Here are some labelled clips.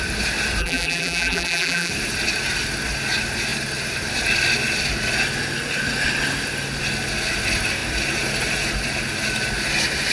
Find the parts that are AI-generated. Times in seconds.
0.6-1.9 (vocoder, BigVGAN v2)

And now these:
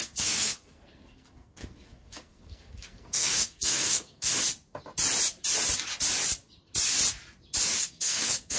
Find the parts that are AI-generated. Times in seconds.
0.0-4.3 (codec, SNAC); 7.8-8.6

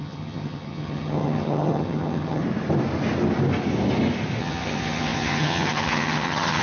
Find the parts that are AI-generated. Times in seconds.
0.0-2.4 (vocoder, HiFi-GAN); 4.4-6.6

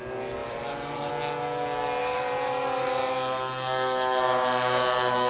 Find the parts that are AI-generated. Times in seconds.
0.4-1.1 (vocoder, BigVGAN v2); 2.0-3.0

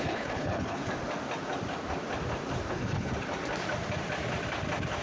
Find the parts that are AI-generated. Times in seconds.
0.0-0.8 (codec, HILCodec); 2.7-3.1

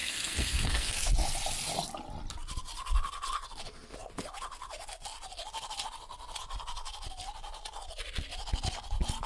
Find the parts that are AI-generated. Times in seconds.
0.0-1.1 (codec, SNAC)

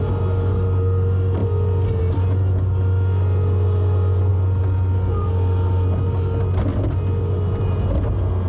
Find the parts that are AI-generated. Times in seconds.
none